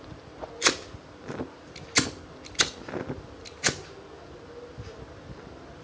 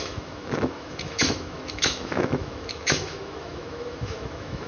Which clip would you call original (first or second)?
first